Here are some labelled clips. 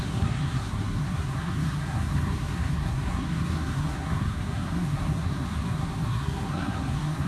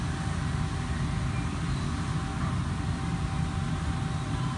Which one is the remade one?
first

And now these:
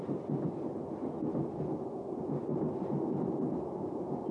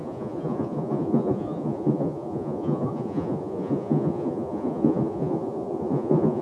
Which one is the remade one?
second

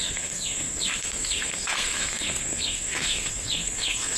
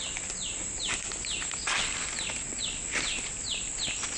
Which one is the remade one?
first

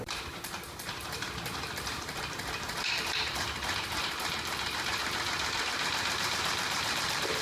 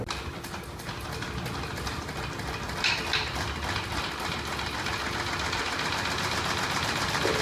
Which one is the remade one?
first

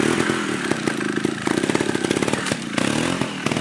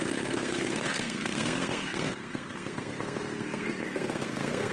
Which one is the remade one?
second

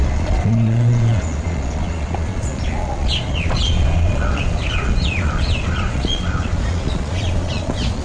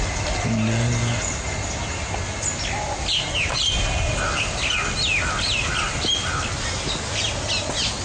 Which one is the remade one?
first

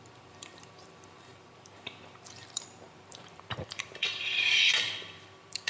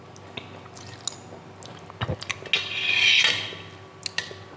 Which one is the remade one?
first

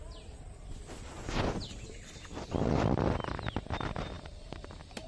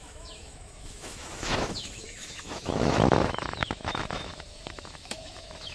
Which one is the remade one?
second